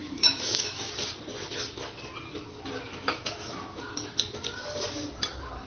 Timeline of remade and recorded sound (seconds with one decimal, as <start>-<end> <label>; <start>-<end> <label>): 0.0-0.9 remade; 0.9-2.9 recorded; 2.9-3.8 remade; 3.8-5.7 recorded